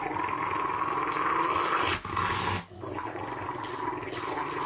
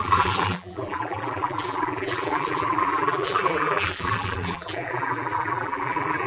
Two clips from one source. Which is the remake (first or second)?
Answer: second